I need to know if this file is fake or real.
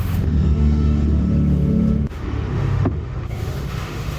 fake